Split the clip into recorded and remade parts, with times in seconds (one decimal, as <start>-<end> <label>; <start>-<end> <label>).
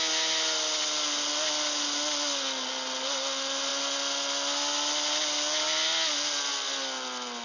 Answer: 0.0-7.4 recorded